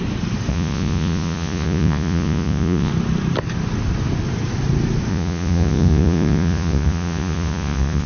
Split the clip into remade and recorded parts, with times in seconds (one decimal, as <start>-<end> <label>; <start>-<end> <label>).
0.0-0.5 recorded; 0.5-2.9 remade; 2.9-5.1 recorded; 5.1-8.1 remade